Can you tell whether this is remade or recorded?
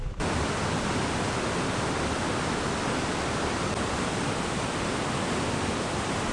recorded